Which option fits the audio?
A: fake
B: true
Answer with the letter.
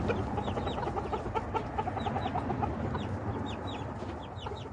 B